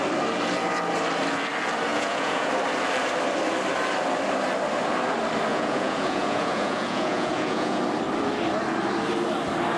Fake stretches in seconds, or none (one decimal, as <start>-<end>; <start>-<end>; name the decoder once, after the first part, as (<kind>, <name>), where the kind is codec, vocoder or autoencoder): 1.9-2.5 (vocoder, Vocos); 5.5-7.8